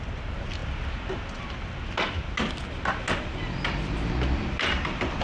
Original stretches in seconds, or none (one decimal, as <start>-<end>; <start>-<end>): 0.0-5.2